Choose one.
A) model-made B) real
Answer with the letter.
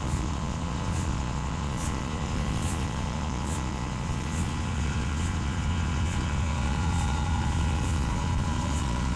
A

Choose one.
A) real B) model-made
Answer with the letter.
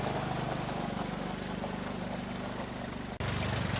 A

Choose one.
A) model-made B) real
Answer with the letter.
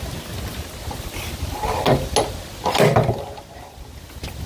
B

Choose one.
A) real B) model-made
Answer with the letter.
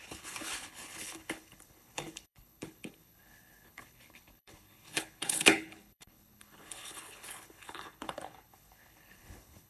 B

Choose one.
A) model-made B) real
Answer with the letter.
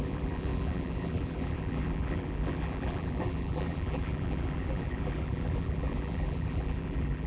A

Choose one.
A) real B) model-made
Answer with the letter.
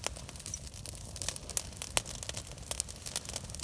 A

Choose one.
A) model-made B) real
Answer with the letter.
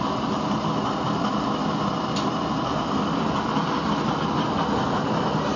B